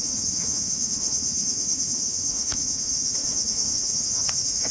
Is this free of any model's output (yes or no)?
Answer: no